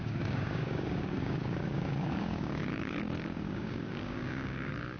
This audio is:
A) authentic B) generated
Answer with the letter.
B